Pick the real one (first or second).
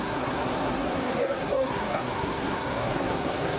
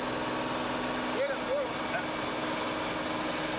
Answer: second